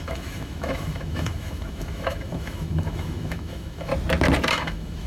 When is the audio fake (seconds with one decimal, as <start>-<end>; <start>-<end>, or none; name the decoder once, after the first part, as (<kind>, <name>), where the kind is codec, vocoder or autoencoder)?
0.0-3.9 (autoencoder, DAC-VAE); 4.5-5.1